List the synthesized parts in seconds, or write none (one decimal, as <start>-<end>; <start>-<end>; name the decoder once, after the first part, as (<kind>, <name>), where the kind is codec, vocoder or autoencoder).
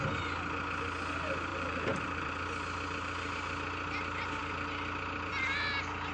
1.5-2.3 (vocoder, BigVGAN v2)